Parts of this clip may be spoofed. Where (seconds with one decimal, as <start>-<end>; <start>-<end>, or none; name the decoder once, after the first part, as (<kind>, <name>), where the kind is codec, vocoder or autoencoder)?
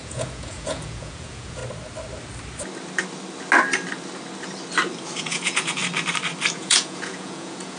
0.0-1.6 (vocoder, Vocos); 5.2-5.8; 6.5-7.8